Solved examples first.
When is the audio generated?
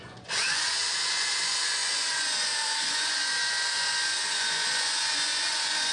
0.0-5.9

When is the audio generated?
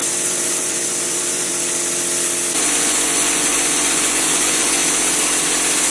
0.0-1.5; 2.6-4.8